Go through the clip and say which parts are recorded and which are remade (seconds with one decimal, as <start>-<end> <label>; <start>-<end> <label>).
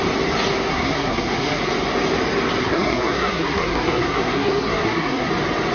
0.0-0.7 recorded; 0.7-1.6 remade; 1.6-2.6 recorded; 2.6-5.3 remade; 5.3-5.7 recorded